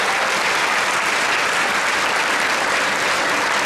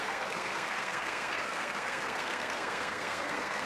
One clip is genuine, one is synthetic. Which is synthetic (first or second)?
second